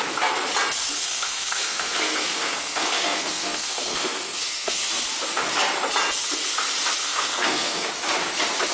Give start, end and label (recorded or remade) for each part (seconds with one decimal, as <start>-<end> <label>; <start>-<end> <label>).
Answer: 0.0-1.1 recorded; 1.1-4.8 remade; 4.8-7.0 recorded; 7.0-7.9 remade; 7.9-8.7 recorded